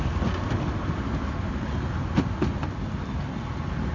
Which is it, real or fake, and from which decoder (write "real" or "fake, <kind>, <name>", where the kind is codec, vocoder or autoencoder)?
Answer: real